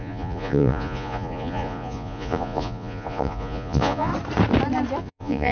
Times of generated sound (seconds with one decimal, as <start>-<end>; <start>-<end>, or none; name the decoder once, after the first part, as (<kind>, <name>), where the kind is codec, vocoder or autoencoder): 0.0-4.1 (vocoder, Vocos); 5.0-5.5